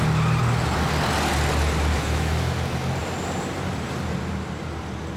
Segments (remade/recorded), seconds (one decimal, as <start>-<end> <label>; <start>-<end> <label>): 0.0-1.9 recorded; 1.9-2.5 remade; 2.5-5.2 recorded